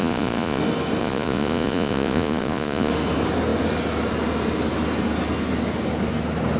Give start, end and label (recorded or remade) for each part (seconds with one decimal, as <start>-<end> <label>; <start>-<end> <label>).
0.0-0.6 remade; 0.6-1.0 recorded; 1.0-2.9 remade; 2.9-6.6 recorded